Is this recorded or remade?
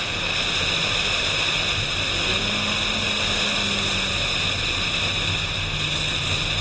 recorded